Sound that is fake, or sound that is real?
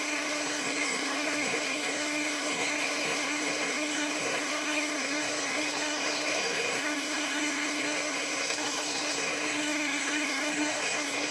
fake